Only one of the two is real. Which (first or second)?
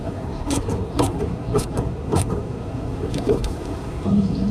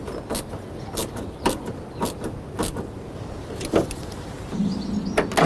second